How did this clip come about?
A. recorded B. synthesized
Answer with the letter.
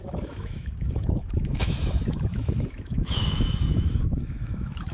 B